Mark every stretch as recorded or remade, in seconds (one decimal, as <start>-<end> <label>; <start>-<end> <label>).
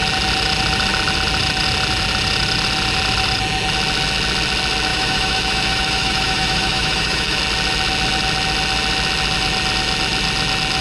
0.0-4.9 recorded; 4.9-7.4 remade; 7.4-10.8 recorded